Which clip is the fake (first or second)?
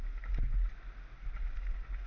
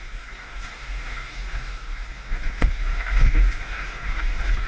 second